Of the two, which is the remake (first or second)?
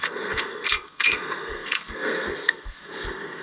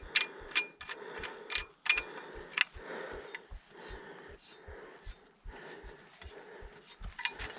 first